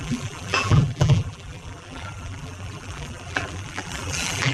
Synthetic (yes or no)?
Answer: yes